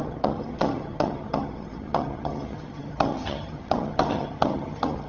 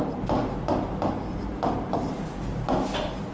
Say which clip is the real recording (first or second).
second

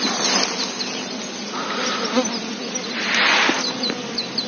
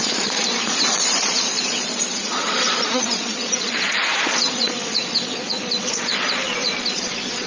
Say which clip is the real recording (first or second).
first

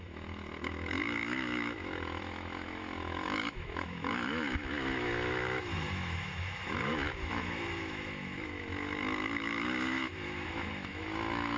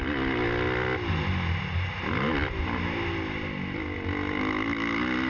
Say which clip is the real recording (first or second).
second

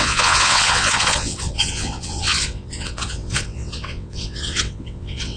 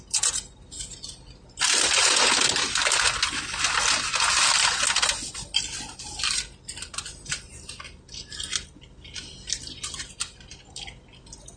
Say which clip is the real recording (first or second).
second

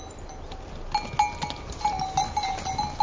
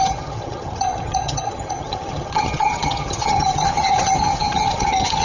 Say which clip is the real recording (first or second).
first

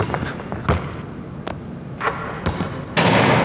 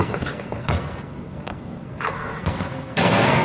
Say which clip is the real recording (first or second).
first